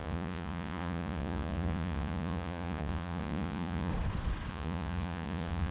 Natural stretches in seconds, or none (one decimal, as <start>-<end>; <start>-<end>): 3.9-4.5